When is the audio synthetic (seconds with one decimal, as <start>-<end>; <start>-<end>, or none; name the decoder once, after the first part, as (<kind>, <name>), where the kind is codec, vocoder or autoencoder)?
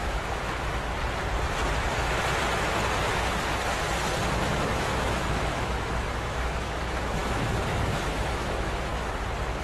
0.0-0.9 (autoencoder, DAC-VAE); 4.4-8.9